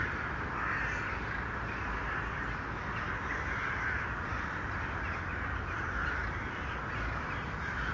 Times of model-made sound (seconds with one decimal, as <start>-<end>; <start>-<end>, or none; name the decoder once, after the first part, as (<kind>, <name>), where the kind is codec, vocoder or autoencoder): none